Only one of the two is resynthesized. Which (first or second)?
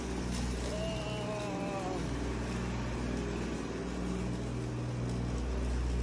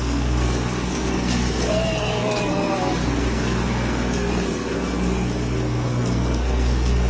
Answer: second